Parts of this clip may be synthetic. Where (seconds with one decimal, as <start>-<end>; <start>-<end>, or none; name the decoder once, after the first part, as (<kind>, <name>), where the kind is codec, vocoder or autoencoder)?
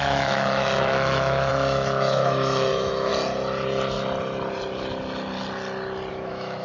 0.0-3.1 (autoencoder, DAC-VAE); 6.1-6.6